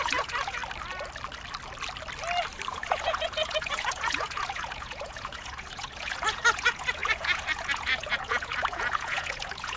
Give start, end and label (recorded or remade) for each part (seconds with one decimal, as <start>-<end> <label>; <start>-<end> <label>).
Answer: 0.0-0.6 remade; 0.6-2.7 recorded; 2.7-9.8 remade